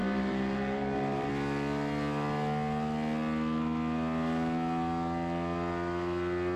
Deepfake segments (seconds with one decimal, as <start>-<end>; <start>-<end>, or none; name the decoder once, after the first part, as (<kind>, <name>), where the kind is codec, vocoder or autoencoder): 0.0-1.3 (vocoder, BigVGAN v2)